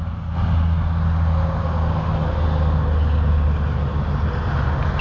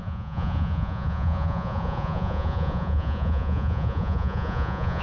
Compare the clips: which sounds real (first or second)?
first